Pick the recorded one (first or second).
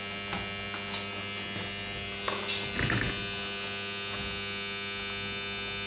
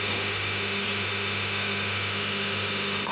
first